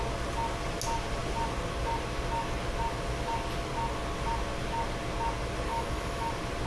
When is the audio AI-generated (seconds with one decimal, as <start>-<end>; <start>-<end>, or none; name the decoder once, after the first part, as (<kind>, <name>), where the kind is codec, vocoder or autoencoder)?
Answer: 5.7-6.3 (autoencoder, DAC-VAE)